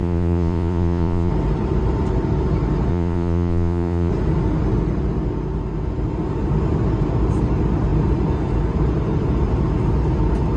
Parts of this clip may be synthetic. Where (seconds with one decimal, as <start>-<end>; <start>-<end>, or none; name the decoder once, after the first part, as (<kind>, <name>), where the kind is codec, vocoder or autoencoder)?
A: 0.0-1.3 (vocoder, Vocos); 2.9-4.1